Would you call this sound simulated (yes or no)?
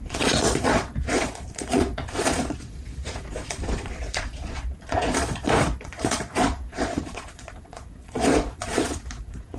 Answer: yes